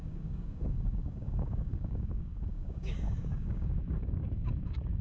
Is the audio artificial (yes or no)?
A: yes